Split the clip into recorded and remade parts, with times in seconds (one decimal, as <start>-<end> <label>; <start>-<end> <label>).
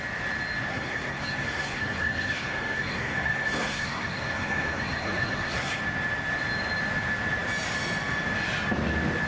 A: 0.0-0.7 recorded; 0.7-5.8 remade; 5.8-9.3 recorded